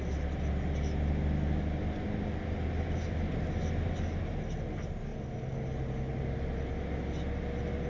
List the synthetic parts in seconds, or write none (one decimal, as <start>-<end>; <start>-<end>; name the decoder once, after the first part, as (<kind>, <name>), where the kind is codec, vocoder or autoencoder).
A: none